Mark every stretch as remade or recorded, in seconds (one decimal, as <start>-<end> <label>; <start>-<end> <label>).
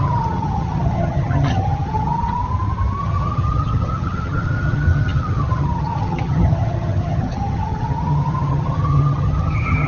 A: 0.0-2.4 remade; 2.4-3.0 recorded; 3.0-9.9 remade